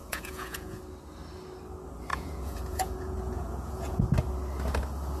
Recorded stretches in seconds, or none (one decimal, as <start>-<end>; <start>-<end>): 0.8-2.1; 4.0-5.2